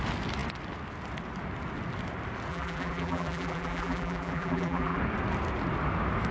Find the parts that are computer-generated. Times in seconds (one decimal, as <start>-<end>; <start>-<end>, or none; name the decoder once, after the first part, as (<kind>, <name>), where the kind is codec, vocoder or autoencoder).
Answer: 2.5-5.0 (vocoder, BigVGAN v2)